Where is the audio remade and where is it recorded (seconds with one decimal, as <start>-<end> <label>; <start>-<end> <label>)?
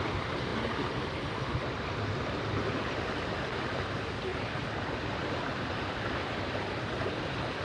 0.0-7.6 recorded